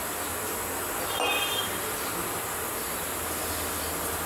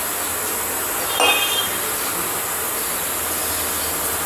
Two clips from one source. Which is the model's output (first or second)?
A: first